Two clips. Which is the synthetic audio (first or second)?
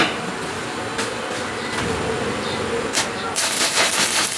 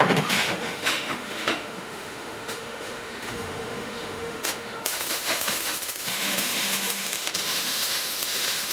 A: second